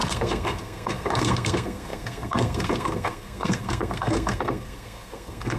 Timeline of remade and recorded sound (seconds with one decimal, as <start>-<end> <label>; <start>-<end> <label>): 0.0-5.6 remade